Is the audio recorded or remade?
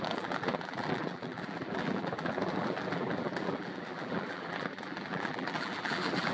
remade